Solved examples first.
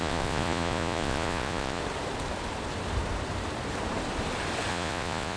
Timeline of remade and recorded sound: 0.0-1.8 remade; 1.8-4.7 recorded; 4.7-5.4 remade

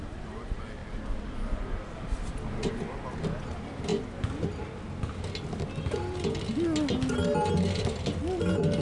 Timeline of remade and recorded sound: 0.0-8.8 recorded

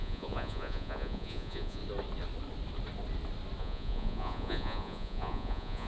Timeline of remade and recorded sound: 0.0-1.8 remade; 1.8-3.6 recorded; 3.6-5.9 remade

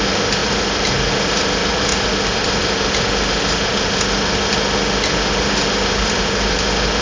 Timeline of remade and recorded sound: 0.0-7.0 recorded

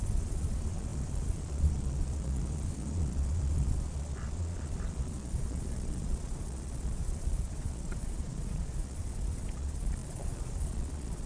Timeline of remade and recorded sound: 0.0-11.3 remade

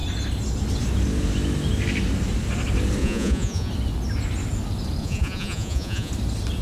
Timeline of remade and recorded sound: 0.0-3.0 recorded; 3.0-3.7 remade; 3.7-5.0 recorded; 5.0-6.1 remade; 6.1-6.6 recorded